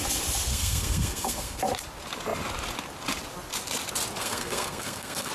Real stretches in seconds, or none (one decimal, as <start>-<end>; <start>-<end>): 0.0-0.5; 1.6-4.2

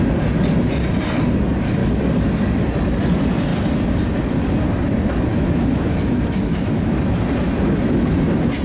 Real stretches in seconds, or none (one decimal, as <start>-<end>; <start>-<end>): 0.0-5.3; 6.9-8.6

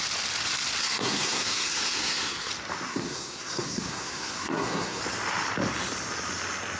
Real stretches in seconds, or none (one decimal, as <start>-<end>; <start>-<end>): 0.0-0.8; 2.5-2.9; 5.0-6.8

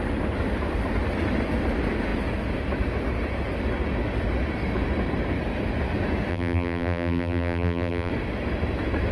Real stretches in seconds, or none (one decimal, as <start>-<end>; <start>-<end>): 0.0-6.3; 8.1-9.1

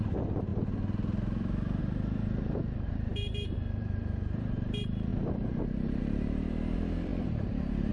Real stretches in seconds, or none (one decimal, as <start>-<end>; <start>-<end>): 0.5-1.8

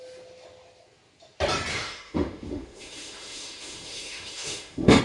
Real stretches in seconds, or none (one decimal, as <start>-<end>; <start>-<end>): 0.0-1.7